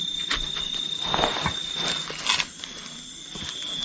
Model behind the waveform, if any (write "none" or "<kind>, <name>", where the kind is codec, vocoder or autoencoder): none